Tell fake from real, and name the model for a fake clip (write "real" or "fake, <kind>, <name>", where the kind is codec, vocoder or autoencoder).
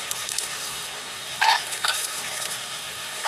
fake, codec, SNAC